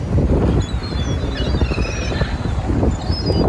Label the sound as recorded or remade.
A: recorded